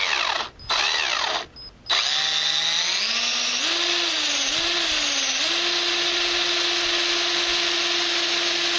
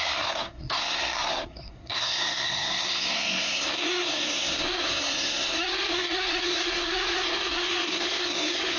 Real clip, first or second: first